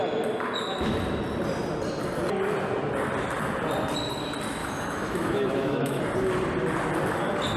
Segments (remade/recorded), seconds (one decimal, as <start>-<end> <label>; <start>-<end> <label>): 0.0-4.6 recorded; 4.6-6.0 remade; 6.0-7.6 recorded